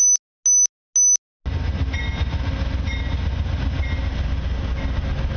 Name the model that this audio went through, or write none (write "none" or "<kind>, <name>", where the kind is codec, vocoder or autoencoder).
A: none